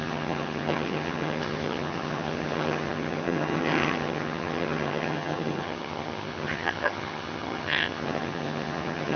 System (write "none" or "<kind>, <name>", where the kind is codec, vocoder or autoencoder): vocoder, HiFi-GAN